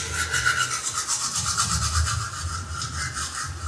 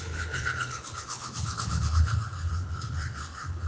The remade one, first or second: second